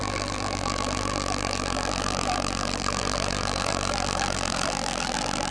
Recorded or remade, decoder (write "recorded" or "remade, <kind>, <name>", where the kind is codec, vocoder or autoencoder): remade, vocoder, BigVGAN v2